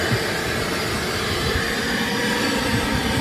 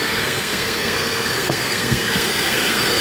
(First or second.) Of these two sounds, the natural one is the first